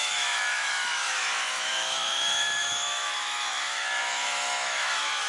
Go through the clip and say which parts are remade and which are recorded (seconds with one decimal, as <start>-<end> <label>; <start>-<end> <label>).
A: 0.0-5.3 remade